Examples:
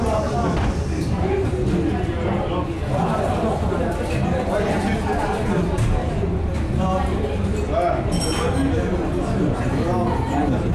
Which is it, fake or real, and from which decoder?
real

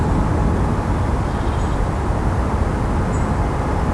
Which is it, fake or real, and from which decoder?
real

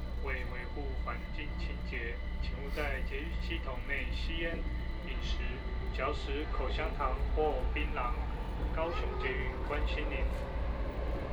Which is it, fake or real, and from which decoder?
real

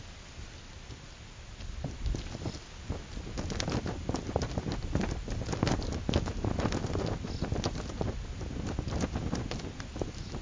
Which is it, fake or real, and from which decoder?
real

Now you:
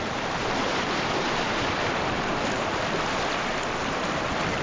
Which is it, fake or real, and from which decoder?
real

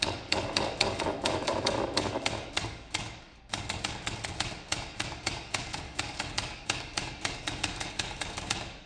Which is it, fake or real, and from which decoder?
fake, codec, DAC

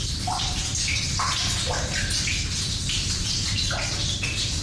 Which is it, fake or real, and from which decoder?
real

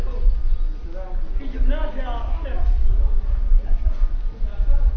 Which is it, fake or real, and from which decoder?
real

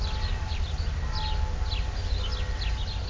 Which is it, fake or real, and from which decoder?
real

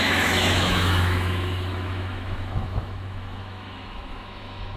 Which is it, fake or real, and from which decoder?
fake, autoencoder, DAC-VAE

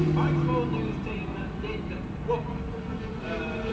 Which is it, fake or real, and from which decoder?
real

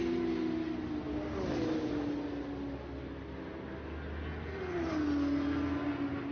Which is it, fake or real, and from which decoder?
real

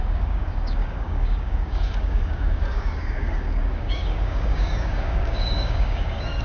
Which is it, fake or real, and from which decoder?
fake, codec, DAC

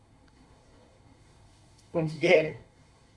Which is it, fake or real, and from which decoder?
fake, codec, SNAC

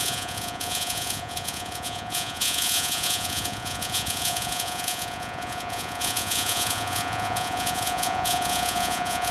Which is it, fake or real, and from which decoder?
fake, vocoder, Vocos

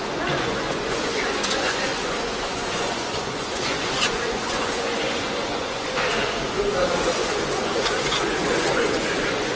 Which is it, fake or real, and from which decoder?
fake, vocoder, Vocos